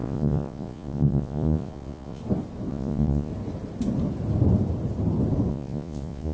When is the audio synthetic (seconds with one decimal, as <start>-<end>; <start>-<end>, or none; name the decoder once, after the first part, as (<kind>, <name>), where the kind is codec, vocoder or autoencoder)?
0.0-2.2 (vocoder, Vocos); 2.7-3.3; 5.5-6.3